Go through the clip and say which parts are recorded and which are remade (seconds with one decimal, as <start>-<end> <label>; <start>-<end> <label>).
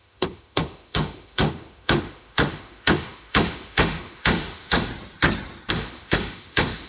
0.0-4.9 remade; 4.9-5.7 recorded; 5.7-6.9 remade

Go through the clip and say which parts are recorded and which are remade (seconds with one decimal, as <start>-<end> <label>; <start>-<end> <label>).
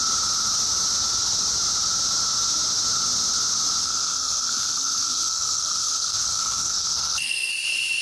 0.0-3.8 recorded; 3.8-7.5 remade; 7.5-8.0 recorded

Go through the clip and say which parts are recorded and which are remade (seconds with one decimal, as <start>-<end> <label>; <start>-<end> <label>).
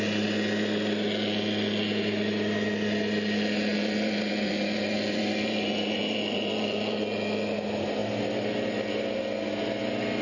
0.0-3.7 recorded; 3.7-7.0 remade; 7.0-10.2 recorded